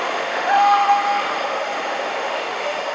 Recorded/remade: remade